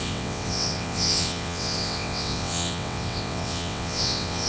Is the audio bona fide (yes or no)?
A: no